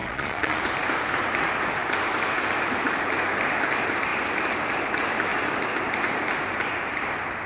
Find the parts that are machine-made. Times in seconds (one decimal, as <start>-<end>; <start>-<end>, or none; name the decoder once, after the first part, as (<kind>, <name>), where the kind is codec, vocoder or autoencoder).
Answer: 0.0-0.6 (vocoder, Vocos)